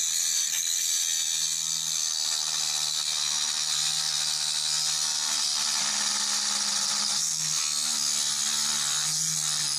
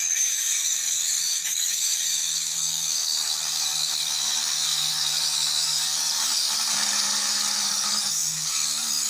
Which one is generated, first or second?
second